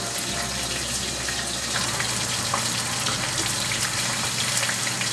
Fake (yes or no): yes